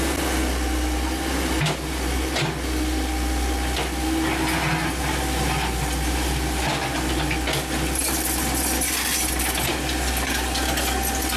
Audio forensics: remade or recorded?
recorded